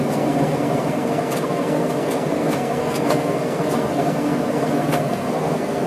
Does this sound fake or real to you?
fake